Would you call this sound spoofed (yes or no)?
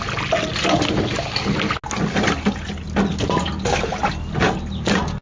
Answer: no